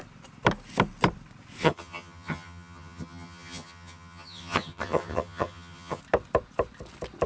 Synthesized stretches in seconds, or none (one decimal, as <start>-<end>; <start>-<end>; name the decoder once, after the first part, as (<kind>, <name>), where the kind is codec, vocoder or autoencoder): 1.6-6.0 (vocoder, HiFi-GAN)